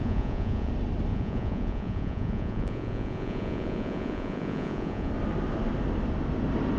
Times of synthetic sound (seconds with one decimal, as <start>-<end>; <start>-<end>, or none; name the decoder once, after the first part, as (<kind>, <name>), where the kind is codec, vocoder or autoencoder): 0.0-0.7 (vocoder, Vocos); 1.1-5.1